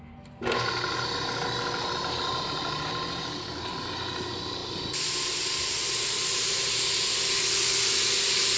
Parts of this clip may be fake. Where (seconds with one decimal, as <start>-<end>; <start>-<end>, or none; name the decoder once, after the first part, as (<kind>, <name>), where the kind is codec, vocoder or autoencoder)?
none